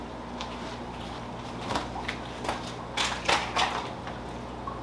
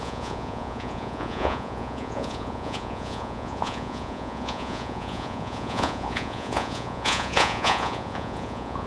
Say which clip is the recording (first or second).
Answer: first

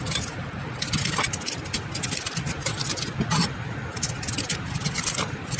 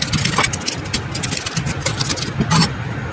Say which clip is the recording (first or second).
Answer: second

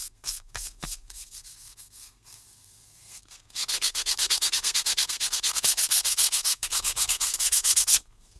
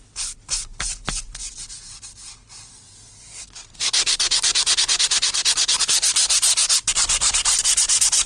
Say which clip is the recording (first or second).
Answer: second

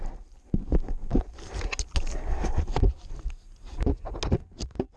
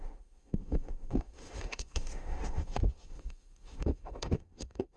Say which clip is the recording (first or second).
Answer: first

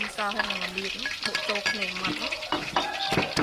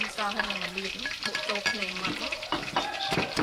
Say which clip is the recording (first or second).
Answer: first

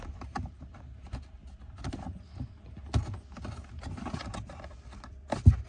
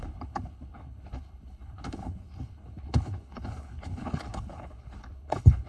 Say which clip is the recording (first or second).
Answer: first